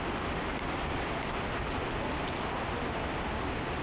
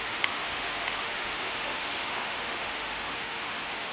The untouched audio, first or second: first